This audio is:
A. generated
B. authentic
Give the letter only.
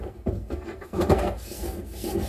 A